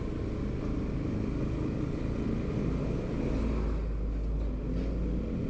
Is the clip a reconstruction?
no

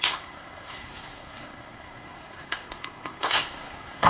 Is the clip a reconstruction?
yes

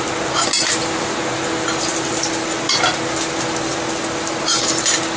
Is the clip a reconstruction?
no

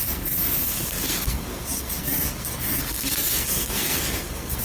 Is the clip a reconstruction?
yes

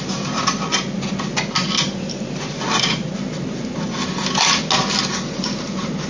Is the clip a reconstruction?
no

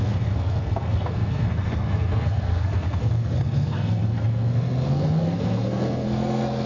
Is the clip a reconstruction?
yes